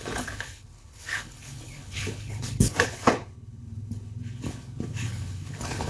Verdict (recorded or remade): remade